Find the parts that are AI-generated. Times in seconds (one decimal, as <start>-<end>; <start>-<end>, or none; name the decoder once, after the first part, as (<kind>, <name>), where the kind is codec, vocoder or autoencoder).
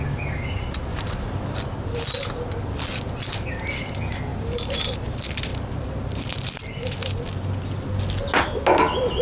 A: 0.9-1.6 (vocoder, BigVGAN v2); 4.3-4.9